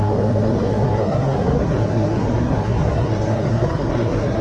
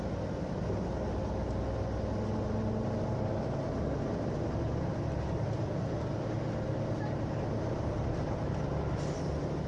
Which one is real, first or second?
second